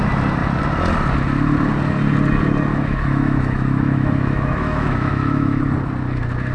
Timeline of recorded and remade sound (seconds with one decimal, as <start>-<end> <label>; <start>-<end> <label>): 0.0-2.7 recorded; 2.7-5.6 remade; 5.6-6.5 recorded